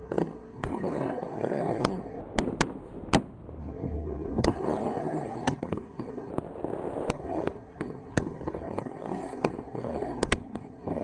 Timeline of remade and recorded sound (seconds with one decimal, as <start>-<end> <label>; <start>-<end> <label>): 0.0-2.2 remade; 2.2-3.6 recorded; 3.6-6.3 remade; 6.3-7.1 recorded; 7.1-11.0 remade